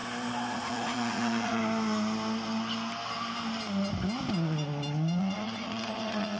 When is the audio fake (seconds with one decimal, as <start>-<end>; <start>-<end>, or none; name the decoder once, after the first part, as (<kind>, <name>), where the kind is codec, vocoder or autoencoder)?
0.5-1.6 (vocoder, Vocos); 5.2-6.4

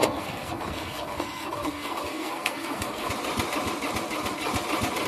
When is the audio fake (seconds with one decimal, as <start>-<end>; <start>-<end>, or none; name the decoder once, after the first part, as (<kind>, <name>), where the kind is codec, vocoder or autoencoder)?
0.0-3.1 (codec, SNAC)

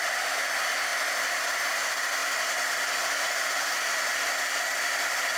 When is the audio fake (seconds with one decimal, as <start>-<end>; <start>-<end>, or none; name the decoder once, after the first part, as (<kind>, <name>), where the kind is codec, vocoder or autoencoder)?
2.2-5.4 (vocoder, BigVGAN v2)

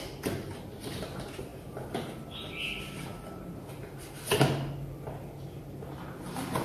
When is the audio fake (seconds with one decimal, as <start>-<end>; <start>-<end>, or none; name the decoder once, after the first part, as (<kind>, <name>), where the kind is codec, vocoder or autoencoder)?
none